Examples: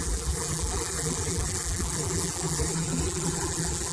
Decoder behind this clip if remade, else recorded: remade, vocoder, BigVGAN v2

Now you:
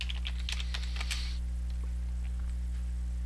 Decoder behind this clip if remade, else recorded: recorded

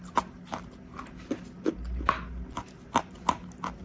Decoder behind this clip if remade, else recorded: recorded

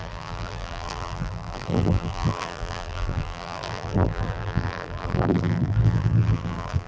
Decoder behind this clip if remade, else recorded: remade, vocoder, BigVGAN v2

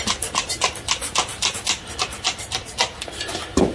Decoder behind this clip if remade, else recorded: recorded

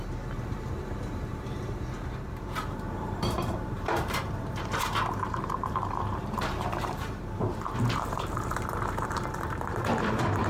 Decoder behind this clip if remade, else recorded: remade, vocoder, BigVGAN v2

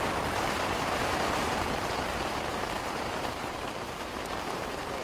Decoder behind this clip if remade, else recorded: remade, vocoder, BigVGAN v2